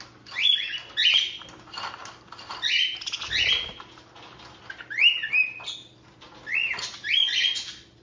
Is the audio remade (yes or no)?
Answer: no